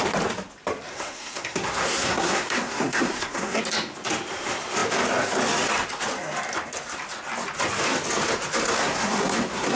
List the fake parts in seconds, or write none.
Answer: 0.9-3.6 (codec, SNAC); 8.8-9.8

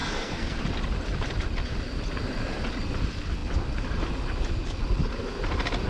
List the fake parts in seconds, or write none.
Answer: 0.0-0.6 (codec, SNAC)

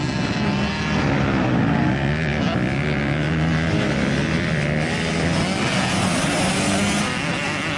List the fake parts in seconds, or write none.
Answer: none